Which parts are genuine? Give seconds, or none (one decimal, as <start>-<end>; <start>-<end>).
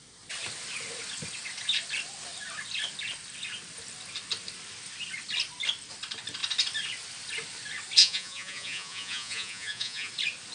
0.0-8.0; 10.1-10.5